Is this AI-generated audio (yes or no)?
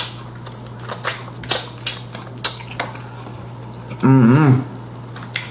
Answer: no